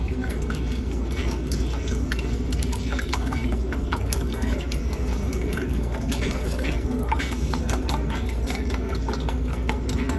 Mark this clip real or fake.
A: fake